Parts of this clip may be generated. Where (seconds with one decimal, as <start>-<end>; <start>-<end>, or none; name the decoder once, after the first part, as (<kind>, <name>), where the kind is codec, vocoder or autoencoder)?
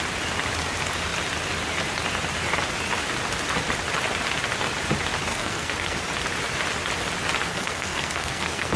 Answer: 5.3-6.0 (codec, SNAC); 7.5-8.8